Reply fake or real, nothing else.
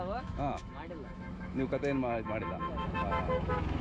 fake